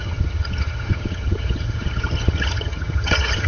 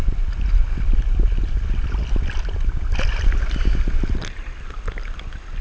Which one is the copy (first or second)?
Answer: first